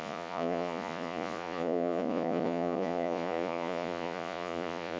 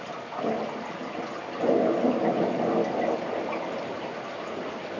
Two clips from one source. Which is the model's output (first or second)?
first